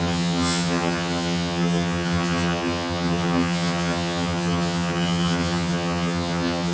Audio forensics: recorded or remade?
remade